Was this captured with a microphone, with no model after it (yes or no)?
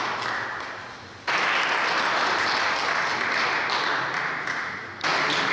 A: yes